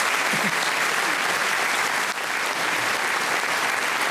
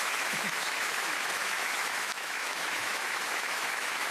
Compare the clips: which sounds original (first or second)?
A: first